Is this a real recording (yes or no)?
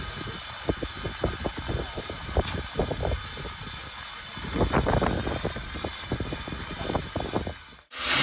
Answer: yes